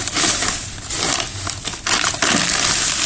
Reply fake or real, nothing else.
real